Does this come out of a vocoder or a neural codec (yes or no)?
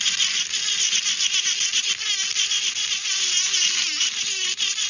no